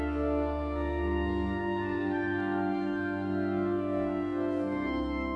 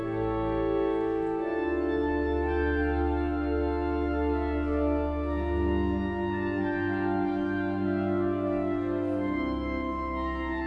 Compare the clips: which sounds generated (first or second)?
first